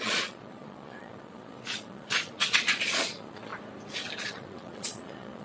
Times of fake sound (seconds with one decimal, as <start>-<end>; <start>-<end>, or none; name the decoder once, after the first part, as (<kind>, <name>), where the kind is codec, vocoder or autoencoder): 0.0-3.5 (vocoder, Vocos); 4.2-5.4